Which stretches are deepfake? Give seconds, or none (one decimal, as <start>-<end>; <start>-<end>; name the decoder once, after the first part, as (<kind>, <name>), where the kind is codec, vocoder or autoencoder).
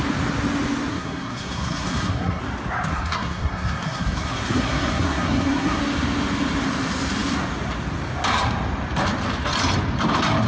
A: 0.9-2.4 (codec, SNAC); 2.9-5.8